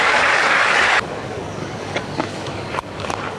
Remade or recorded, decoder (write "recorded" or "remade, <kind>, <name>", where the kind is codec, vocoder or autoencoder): remade, codec, DAC